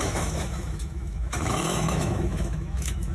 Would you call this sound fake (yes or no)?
yes